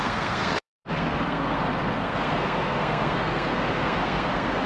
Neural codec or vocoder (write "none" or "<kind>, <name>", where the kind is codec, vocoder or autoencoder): codec, SNAC